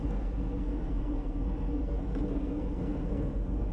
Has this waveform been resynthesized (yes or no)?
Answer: yes